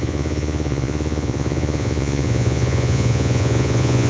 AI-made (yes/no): yes